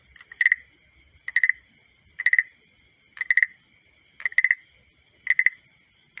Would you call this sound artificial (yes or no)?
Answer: no